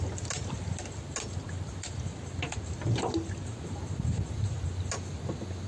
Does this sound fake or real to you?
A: real